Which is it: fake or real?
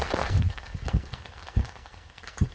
fake